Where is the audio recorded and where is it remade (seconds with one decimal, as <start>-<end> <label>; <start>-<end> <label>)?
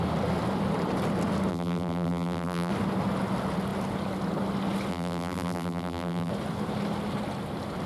0.0-1.5 recorded; 1.5-2.7 remade; 2.7-4.9 recorded; 4.9-6.3 remade; 6.3-7.9 recorded